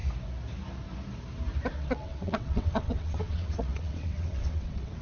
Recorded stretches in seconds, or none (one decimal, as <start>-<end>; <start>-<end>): 0.0-1.7